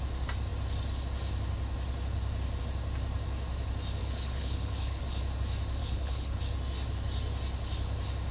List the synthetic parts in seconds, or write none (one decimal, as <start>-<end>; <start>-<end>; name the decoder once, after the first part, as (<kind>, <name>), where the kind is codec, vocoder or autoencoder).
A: 4.0-5.0 (codec, HILCodec); 5.8-6.4